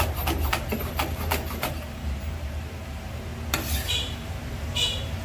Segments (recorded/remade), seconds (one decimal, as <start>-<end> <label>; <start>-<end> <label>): 0.0-3.3 remade; 3.3-3.9 recorded; 3.9-5.2 remade